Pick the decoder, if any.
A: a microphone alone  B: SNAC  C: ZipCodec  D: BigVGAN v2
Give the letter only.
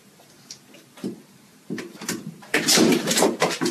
D